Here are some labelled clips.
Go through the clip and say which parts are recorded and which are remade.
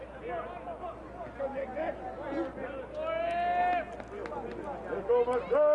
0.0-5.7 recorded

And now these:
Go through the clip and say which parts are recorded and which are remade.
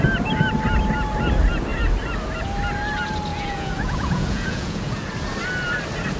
0.0-3.3 recorded; 3.3-5.1 remade; 5.1-6.2 recorded